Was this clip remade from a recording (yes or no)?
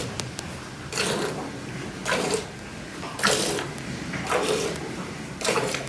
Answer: no